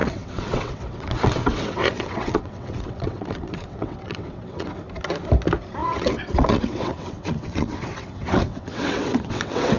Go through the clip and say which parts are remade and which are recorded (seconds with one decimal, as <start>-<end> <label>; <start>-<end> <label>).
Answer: 0.0-4.7 remade; 4.7-5.8 recorded; 5.8-9.8 remade